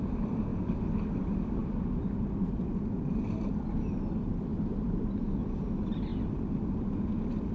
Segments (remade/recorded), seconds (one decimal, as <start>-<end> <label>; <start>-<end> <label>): 0.0-7.5 recorded